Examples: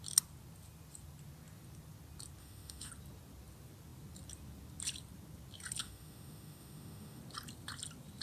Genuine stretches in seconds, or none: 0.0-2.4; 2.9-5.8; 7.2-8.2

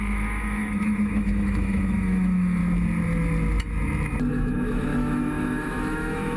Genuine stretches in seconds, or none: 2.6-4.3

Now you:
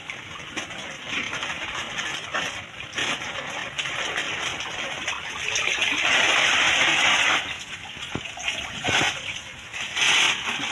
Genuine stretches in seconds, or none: 0.0-10.7